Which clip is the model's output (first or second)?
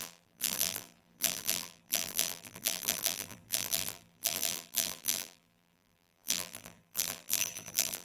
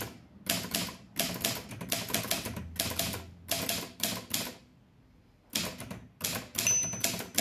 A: first